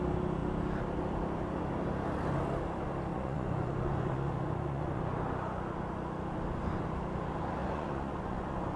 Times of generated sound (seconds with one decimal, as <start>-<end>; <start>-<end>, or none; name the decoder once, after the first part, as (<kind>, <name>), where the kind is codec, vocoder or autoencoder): 3.1-5.0 (vocoder, Vocos); 7.6-8.8